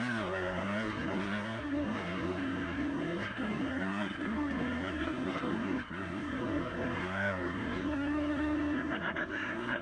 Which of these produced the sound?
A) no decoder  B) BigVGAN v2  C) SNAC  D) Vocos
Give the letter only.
C